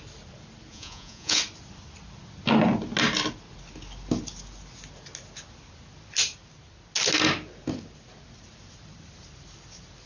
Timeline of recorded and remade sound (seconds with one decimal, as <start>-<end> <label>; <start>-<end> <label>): 0.0-0.7 recorded; 0.7-1.4 remade; 1.4-10.1 recorded